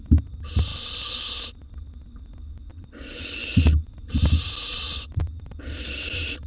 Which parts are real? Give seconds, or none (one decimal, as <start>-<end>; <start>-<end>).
0.0-2.7; 3.9-4.7; 5.5-6.5